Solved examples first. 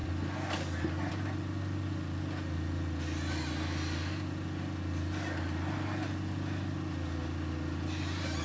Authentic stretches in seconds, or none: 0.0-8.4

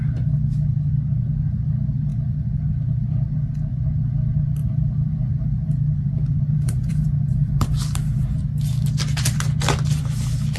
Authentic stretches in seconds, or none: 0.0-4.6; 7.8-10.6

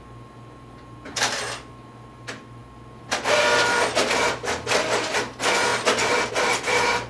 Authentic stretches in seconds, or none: 0.0-7.1